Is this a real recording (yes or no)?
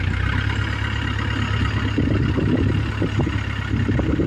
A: yes